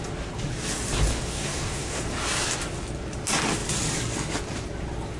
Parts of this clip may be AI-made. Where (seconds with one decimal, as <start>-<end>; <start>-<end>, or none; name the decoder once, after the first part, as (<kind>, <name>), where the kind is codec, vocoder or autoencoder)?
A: 1.3-2.0 (codec, SNAC)